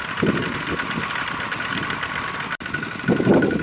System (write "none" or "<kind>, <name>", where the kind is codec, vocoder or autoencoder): none